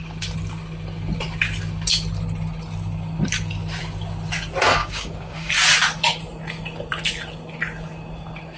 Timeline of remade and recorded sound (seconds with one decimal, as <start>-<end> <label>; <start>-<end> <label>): 0.0-4.8 recorded; 4.8-5.5 remade; 5.5-8.6 recorded